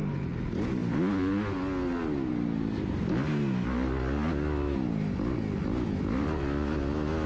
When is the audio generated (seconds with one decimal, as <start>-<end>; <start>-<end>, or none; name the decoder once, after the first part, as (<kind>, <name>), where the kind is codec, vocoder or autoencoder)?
none